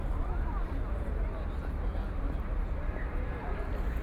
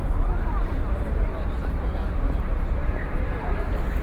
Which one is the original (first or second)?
first